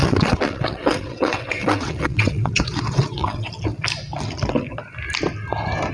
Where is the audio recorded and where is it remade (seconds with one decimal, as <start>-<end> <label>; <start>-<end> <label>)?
0.0-3.5 remade; 3.5-5.9 recorded